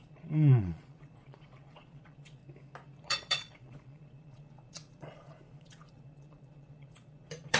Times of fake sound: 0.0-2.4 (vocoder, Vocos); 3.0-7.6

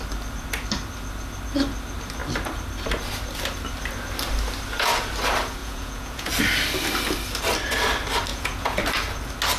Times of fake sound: 5.6-6.3 (vocoder, Vocos); 8.3-8.8

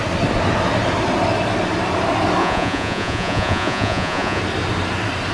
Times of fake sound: 2.4-4.4 (vocoder, Vocos)

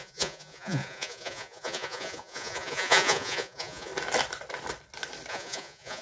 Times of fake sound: 0.0-3.9 (vocoder, Vocos); 5.3-6.0

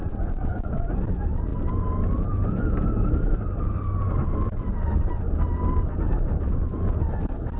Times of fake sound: 0.0-0.9 (vocoder, Vocos)